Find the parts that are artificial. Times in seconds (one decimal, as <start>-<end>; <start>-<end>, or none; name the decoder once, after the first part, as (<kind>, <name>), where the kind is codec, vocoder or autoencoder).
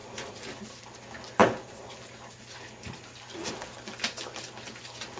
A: 0.0-0.6 (vocoder, BigVGAN v2)